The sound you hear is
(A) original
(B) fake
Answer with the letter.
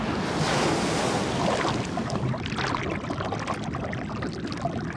A